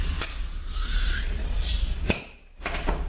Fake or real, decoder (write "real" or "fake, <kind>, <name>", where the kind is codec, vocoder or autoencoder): fake, vocoder, Vocos